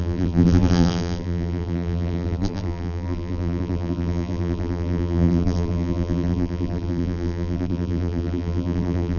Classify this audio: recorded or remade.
remade